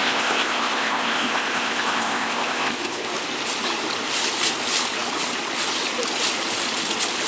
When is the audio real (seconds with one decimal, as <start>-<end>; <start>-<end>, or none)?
3.1-7.3